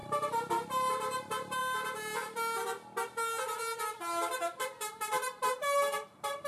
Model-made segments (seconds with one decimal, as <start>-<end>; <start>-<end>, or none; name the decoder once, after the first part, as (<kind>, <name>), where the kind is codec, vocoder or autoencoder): none